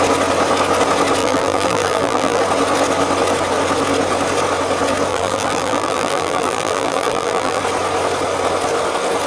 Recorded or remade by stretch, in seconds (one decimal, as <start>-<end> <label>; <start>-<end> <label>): 0.0-1.2 recorded; 1.2-2.4 remade; 2.4-5.1 recorded; 5.1-7.6 remade; 7.6-9.3 recorded